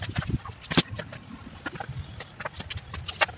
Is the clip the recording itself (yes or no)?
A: yes